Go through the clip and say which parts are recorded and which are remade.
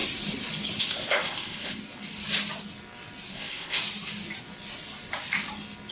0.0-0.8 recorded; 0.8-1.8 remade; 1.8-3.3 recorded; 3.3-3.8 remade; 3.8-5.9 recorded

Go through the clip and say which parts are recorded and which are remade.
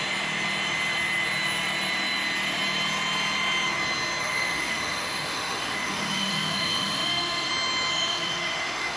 0.0-4.2 recorded; 4.2-7.5 remade; 7.5-7.9 recorded; 7.9-9.0 remade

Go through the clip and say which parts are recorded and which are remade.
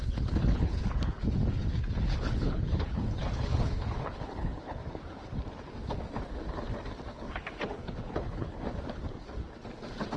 0.0-1.2 remade; 1.2-2.0 recorded; 2.0-4.8 remade; 4.8-7.1 recorded; 7.1-8.5 remade; 8.5-10.2 recorded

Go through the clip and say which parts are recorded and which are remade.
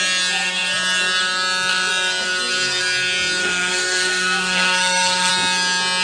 0.0-3.4 recorded; 3.4-5.3 remade; 5.3-6.0 recorded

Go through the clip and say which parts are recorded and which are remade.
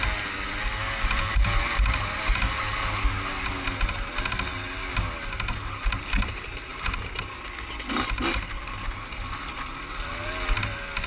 0.0-11.1 recorded